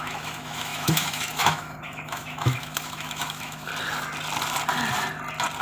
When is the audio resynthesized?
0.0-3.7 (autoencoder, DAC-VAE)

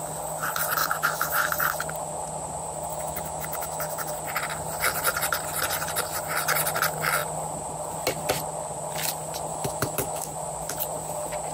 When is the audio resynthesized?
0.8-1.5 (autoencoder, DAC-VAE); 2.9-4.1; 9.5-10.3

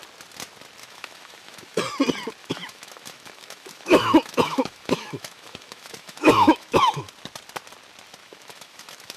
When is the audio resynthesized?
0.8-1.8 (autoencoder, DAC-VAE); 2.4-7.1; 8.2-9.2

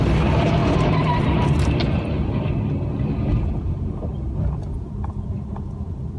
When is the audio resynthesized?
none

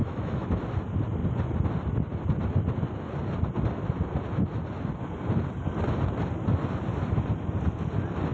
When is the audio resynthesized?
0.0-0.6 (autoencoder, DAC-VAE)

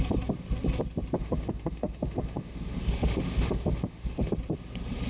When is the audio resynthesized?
1.2-4.3 (autoencoder, DAC-VAE)

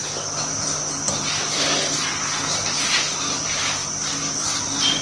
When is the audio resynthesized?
none

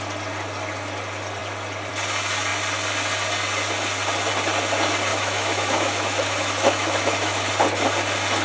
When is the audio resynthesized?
5.1-7.5 (autoencoder, DAC-VAE)